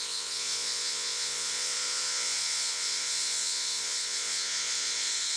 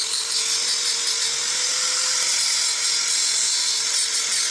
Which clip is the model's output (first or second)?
first